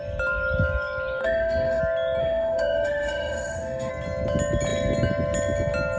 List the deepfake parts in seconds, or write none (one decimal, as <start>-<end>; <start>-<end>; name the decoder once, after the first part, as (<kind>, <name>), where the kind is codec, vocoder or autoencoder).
1.2-1.8 (autoencoder, DAC-VAE); 2.2-3.9